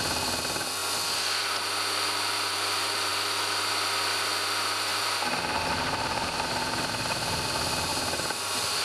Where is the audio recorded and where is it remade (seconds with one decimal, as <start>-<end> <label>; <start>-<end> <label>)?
0.0-4.9 recorded; 4.9-6.9 remade; 6.9-7.9 recorded; 7.9-8.8 remade